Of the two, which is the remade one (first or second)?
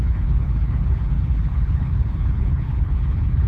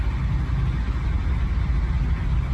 first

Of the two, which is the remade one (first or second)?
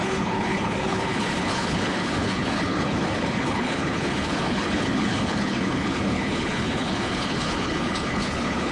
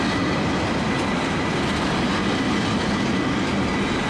first